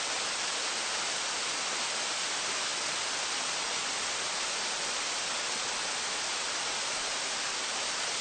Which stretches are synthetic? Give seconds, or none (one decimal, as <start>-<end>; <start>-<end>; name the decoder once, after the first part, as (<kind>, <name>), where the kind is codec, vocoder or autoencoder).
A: none